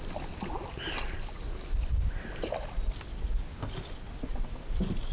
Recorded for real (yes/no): yes